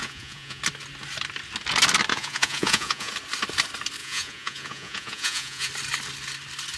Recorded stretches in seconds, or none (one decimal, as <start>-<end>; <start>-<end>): 0.6-2.1; 3.1-4.0; 5.7-6.8